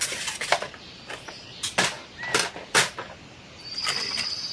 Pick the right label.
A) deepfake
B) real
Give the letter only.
B